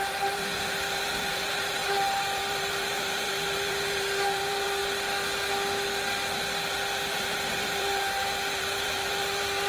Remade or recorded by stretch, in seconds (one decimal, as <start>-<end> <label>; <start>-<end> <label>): 0.0-4.8 remade; 4.8-7.1 recorded; 7.1-9.7 remade